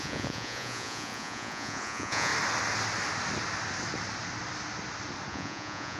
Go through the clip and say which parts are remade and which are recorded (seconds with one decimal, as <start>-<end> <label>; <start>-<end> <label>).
0.0-2.3 remade; 2.3-5.3 recorded; 5.3-6.0 remade